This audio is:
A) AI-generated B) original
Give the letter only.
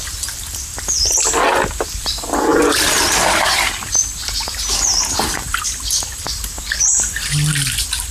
B